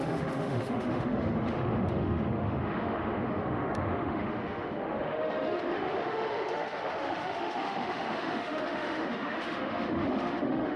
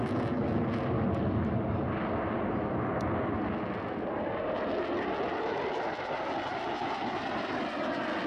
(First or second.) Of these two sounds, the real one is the second